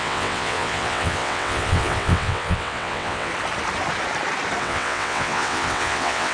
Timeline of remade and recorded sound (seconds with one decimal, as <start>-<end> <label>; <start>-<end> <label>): 0.0-3.3 remade; 3.3-4.6 recorded; 4.6-6.3 remade